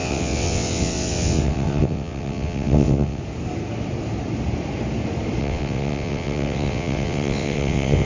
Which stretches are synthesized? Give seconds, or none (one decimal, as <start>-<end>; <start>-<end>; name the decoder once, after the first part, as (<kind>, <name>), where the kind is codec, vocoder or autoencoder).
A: 0.0-3.2 (vocoder, WaveNeXt); 5.4-8.1

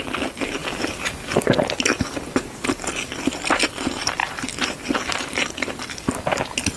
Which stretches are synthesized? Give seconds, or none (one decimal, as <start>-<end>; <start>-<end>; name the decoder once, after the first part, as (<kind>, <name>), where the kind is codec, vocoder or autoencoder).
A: 4.2-5.0 (vocoder, BigVGAN v2)

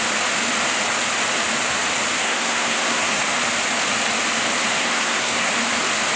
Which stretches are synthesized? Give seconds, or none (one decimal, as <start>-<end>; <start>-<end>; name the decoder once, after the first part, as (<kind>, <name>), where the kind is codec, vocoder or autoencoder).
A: 2.2-3.2 (codec, SNAC); 4.6-5.5

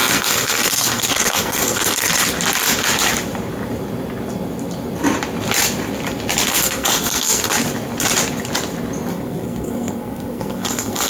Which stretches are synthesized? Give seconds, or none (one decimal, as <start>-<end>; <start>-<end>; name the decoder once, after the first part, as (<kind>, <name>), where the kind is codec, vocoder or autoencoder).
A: 0.0-2.1 (codec, SNAC); 6.5-7.5; 9.1-11.1